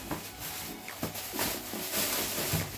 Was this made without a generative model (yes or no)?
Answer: yes